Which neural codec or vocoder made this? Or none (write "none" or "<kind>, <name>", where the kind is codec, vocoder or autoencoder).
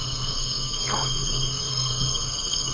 codec, SNAC